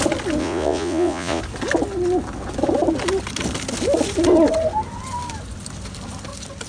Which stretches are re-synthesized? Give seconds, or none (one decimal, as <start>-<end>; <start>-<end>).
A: 0.4-1.4